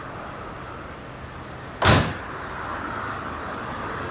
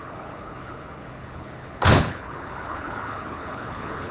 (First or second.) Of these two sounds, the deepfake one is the second